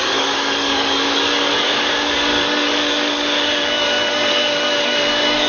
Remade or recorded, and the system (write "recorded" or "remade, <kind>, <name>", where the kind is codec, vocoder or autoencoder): remade, codec, DAC